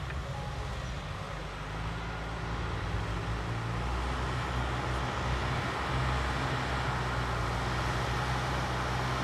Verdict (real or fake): real